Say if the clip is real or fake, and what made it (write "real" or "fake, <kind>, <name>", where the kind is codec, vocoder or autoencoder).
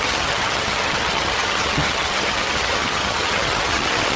fake, vocoder, HiFi-GAN